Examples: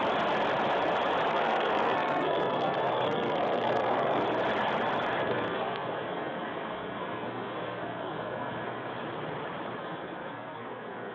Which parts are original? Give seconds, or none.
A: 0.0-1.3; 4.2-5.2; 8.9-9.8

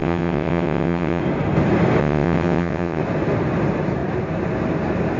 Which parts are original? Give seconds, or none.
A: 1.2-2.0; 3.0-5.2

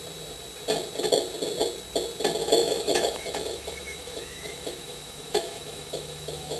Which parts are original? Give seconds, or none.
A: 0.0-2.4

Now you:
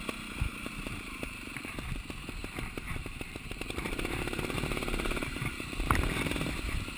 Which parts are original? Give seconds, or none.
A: 0.0-0.5; 1.8-2.4; 6.6-7.0